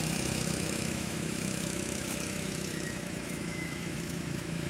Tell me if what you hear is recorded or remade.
remade